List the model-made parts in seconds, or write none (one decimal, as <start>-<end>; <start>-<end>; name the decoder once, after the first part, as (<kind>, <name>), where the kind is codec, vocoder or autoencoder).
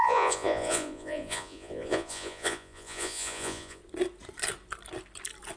0.0-3.8 (vocoder, Vocos)